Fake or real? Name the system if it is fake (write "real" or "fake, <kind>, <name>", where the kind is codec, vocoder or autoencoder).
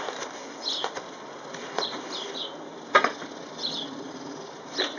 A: real